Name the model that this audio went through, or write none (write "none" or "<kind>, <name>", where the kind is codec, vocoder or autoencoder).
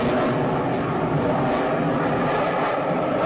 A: none